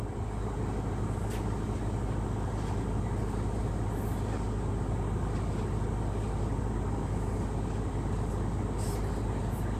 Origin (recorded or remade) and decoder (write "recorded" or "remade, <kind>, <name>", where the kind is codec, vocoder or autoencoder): recorded